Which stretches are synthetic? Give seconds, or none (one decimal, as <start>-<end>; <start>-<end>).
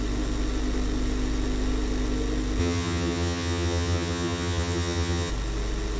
2.6-5.3